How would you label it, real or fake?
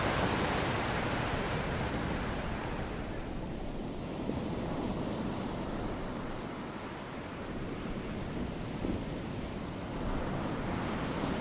real